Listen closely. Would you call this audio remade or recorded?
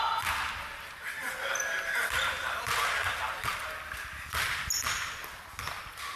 recorded